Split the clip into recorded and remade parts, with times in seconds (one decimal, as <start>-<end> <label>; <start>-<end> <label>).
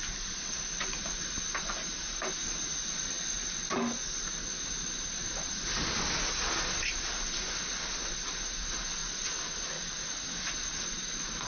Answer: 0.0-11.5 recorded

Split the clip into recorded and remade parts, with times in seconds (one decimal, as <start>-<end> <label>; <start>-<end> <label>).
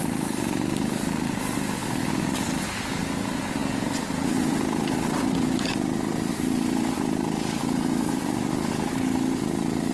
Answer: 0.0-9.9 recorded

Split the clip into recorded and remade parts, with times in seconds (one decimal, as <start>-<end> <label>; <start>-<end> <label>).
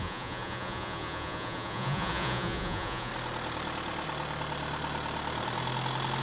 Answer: 0.0-3.1 remade; 3.1-6.2 recorded